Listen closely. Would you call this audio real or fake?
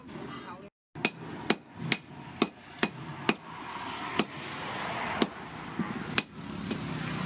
real